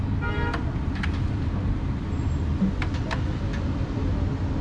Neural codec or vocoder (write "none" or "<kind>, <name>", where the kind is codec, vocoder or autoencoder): none